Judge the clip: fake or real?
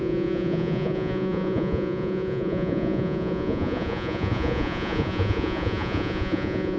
fake